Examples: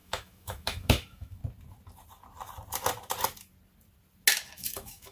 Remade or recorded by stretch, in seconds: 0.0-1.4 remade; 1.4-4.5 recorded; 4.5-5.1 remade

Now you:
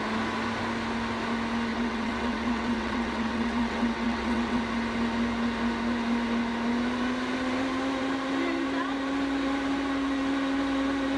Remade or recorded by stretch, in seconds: 0.0-1.7 recorded; 1.7-4.6 remade; 4.6-11.2 recorded